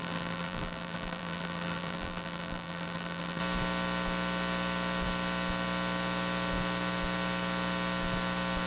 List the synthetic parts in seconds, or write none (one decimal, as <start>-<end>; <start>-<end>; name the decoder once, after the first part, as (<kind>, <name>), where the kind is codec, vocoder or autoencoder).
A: 0.0-3.4 (vocoder, BigVGAN v2)